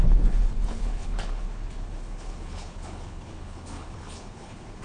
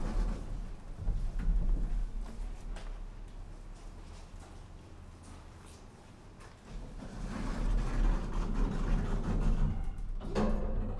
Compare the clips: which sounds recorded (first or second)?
second